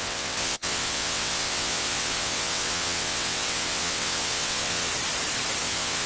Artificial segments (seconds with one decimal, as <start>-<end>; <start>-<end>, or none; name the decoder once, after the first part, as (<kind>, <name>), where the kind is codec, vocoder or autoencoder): 0.0-4.9 (vocoder, WaveNeXt); 5.6-6.1

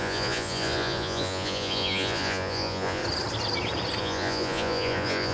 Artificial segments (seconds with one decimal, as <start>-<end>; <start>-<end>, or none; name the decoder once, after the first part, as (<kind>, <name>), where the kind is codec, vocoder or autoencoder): 0.0-3.0 (vocoder, Vocos); 4.0-5.3

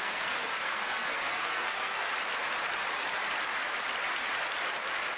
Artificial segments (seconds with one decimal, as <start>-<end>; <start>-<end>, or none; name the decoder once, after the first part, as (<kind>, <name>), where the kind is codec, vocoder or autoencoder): 0.0-2.1 (codec, SNAC)